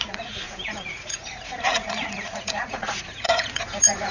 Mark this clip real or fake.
fake